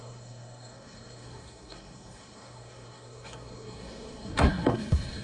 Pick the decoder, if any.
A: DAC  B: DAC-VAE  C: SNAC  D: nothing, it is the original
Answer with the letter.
C